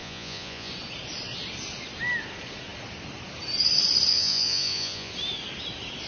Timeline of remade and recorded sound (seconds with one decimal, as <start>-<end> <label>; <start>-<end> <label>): 0.0-0.7 remade; 0.7-4.1 recorded; 4.1-5.1 remade; 5.1-6.1 recorded